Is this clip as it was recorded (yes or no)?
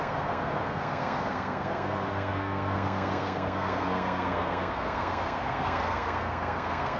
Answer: no